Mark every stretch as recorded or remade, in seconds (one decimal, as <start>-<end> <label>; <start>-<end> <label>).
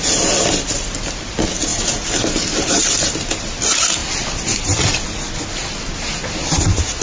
0.0-7.0 recorded